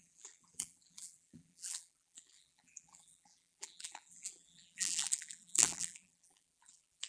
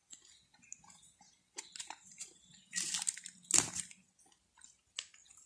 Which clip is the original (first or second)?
second